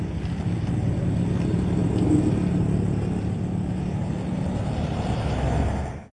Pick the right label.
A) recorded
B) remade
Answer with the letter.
A